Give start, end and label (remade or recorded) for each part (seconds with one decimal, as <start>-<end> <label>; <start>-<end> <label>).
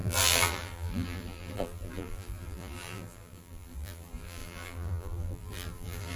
0.0-6.2 remade